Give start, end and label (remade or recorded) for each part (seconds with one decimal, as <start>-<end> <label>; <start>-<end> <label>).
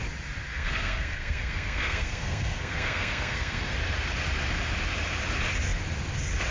0.0-0.5 recorded; 0.5-3.7 remade; 3.7-6.5 recorded